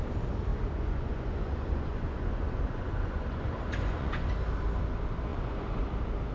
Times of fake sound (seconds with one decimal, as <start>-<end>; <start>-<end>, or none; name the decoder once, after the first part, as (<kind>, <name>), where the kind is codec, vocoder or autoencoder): 0.5-4.3 (vocoder, Vocos); 5.3-5.8